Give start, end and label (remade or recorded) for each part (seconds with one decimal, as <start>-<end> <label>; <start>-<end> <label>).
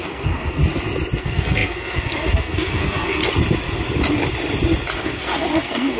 0.0-0.6 remade; 0.6-1.2 recorded; 1.2-3.2 remade; 3.2-5.0 recorded; 5.0-6.0 remade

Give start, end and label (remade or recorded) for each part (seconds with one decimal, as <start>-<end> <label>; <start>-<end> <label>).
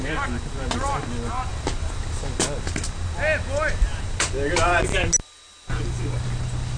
0.0-6.8 recorded